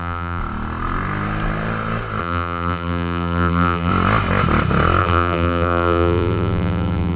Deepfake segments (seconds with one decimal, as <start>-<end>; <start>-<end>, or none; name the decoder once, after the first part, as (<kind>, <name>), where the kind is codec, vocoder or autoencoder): 0.0-0.4 (vocoder, BigVGAN v2); 2.2-3.9; 5.0-7.2